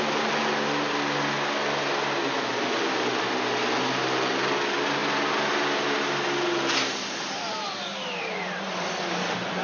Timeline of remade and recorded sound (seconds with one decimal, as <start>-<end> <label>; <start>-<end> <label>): 0.0-9.6 recorded